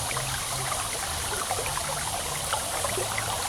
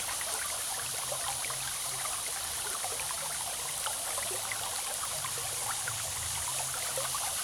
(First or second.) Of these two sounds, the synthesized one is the second